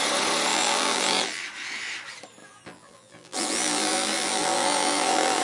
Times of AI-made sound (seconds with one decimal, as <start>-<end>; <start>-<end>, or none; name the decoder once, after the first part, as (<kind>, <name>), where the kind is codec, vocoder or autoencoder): 0.5-1.4 (vocoder, BigVGAN v2); 2.4-5.4